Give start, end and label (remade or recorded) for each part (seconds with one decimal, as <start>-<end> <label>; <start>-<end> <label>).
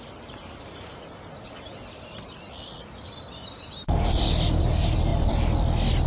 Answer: 0.0-0.9 remade; 0.9-4.6 recorded; 4.6-5.1 remade; 5.1-6.1 recorded